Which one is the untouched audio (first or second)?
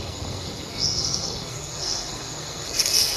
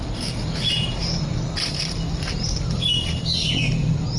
second